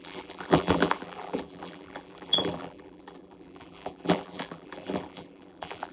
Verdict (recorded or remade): remade